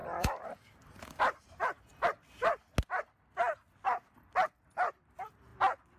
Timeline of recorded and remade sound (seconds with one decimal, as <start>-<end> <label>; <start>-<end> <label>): 0.0-1.5 remade; 1.5-6.0 recorded